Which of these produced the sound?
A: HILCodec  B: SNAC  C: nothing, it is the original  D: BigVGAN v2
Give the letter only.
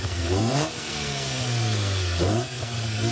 B